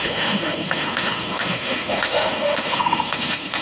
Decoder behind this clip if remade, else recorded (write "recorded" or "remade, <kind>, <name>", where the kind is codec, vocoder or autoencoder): remade, autoencoder, DAC-VAE